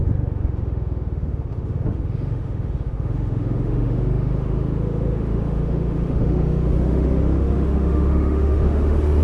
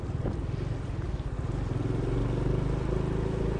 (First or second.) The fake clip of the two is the first